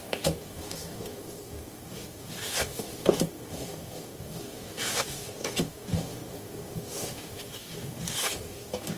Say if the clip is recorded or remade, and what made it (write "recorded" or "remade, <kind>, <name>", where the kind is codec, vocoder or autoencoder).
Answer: remade, codec, DAC